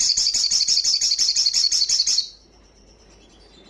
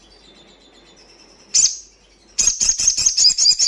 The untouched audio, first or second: second